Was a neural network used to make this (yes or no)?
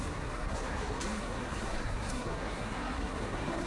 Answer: yes